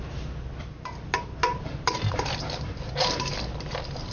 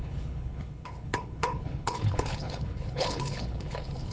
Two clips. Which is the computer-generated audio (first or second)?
second